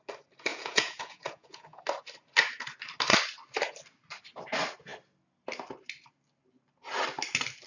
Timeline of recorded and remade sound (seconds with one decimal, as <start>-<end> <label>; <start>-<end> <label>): 0.0-0.5 recorded; 0.5-1.8 remade; 1.8-7.7 recorded